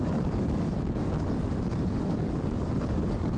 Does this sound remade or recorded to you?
remade